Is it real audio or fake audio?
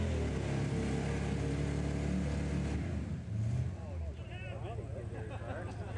real